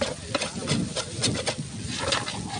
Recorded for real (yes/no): yes